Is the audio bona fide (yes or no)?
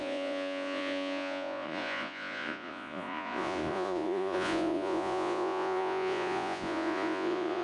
no